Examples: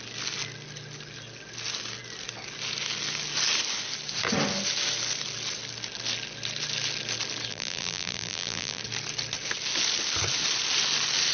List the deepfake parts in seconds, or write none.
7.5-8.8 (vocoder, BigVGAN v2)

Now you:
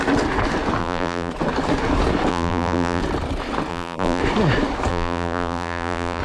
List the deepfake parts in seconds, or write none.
0.8-1.3 (vocoder, BigVGAN v2); 2.3-3.0; 3.7-4.2; 4.9-6.2

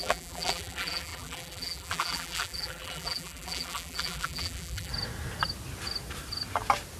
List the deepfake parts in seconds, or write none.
0.0-4.9 (vocoder, BigVGAN v2)

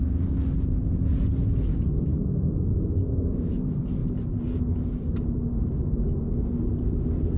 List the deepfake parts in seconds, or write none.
4.0-6.0 (vocoder, BigVGAN v2)

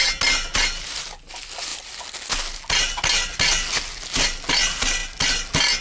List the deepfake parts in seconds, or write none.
none

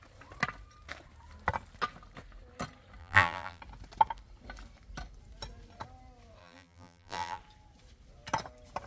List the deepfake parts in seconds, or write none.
3.0-3.6 (vocoder, BigVGAN v2); 6.4-7.4